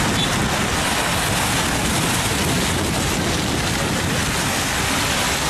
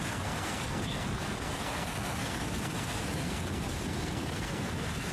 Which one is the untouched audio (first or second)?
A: first